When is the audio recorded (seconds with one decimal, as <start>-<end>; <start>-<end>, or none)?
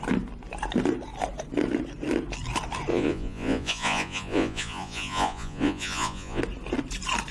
0.0-2.9; 6.4-7.3